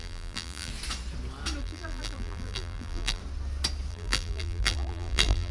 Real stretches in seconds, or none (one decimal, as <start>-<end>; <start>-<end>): 0.7-1.6; 3.2-3.9